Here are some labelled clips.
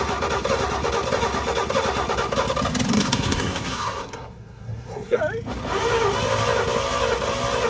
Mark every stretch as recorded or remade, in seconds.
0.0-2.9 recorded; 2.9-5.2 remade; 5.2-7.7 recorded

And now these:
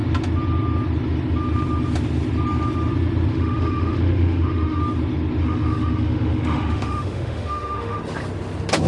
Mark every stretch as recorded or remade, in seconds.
0.0-3.3 recorded; 3.3-4.8 remade; 4.8-5.4 recorded; 5.4-8.0 remade; 8.0-8.9 recorded

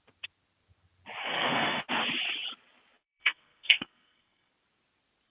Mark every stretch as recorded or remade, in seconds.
0.0-1.2 recorded; 1.2-1.8 remade; 1.8-3.0 recorded; 3.0-4.5 remade; 4.5-5.3 recorded

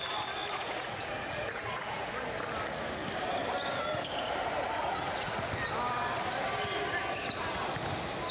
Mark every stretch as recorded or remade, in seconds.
0.0-0.4 recorded; 0.4-2.1 remade; 2.1-4.8 recorded; 4.8-5.5 remade; 5.5-8.3 recorded

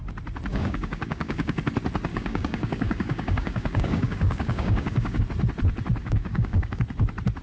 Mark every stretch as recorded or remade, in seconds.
0.0-0.5 recorded; 0.5-1.6 remade; 1.6-2.1 recorded; 2.1-5.2 remade; 5.2-6.0 recorded; 6.0-6.8 remade; 6.8-7.4 recorded

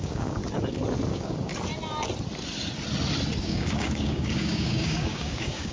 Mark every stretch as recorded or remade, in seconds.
0.0-0.4 remade; 0.4-1.1 recorded; 1.1-1.5 remade; 1.5-3.4 recorded; 3.4-5.7 remade

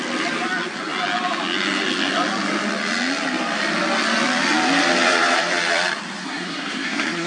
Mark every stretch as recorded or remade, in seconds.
0.0-6.2 recorded; 6.2-7.3 remade